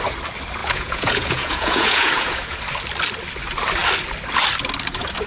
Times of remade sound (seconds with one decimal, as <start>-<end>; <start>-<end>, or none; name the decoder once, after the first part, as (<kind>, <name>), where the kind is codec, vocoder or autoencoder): 0.6-2.6 (vocoder, Vocos)